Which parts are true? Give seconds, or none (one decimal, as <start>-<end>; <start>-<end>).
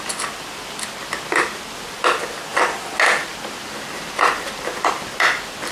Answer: 0.0-3.6; 5.1-5.7